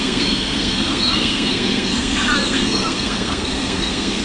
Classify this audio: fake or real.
fake